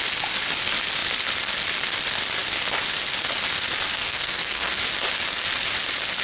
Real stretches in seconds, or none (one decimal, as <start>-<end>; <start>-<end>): 0.0-3.9; 4.8-6.2